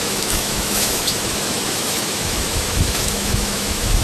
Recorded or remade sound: remade